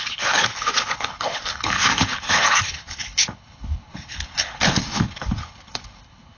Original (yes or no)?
no